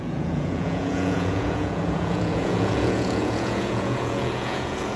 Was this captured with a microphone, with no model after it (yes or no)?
no